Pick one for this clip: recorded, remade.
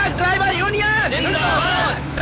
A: remade